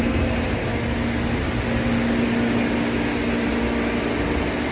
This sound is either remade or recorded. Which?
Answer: recorded